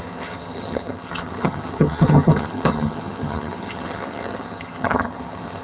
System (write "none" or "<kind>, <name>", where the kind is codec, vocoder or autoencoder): vocoder, HiFi-GAN